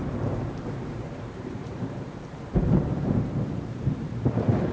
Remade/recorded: remade